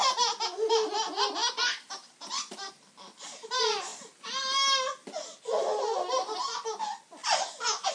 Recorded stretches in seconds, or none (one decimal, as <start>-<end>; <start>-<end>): 0.0-7.9